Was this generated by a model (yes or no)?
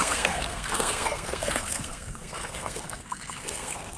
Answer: yes